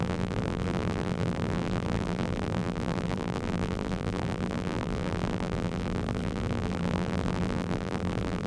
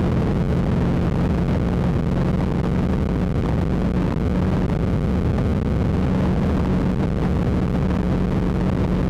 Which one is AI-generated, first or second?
first